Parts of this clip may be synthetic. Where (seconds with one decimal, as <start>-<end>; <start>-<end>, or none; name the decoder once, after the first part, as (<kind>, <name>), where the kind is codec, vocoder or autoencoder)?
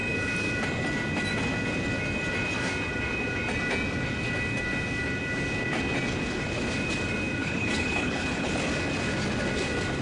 7.4-8.5 (codec, HILCodec)